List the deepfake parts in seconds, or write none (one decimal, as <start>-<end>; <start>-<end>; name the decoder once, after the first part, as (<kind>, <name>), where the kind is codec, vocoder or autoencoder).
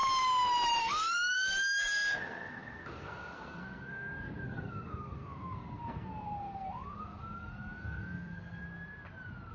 0.8-8.6 (codec, SNAC)